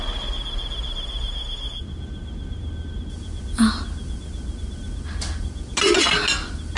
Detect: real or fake real